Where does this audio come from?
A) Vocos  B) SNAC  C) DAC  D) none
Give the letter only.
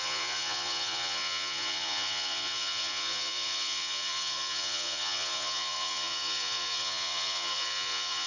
A